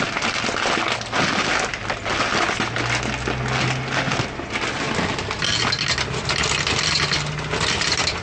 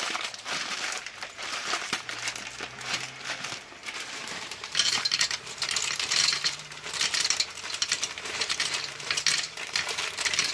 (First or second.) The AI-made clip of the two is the second